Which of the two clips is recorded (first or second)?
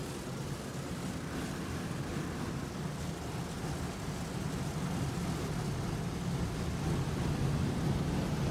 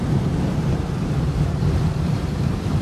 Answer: first